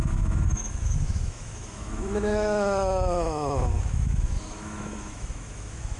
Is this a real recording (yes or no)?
no